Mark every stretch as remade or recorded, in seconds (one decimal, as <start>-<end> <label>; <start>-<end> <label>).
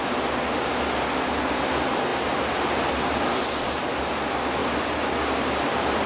0.0-2.1 recorded; 2.1-4.0 remade; 4.0-4.6 recorded; 4.6-6.1 remade